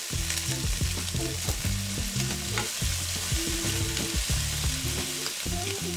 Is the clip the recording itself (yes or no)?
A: yes